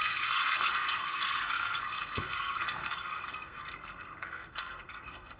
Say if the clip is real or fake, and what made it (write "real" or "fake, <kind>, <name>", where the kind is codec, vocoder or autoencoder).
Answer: fake, codec, SNAC